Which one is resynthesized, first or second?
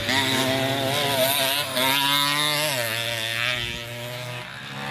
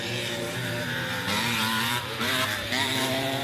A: second